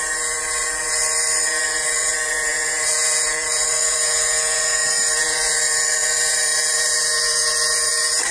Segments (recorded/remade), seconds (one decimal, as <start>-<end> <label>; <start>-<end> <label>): 0.0-8.3 remade